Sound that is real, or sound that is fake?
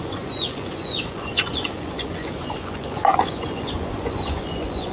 fake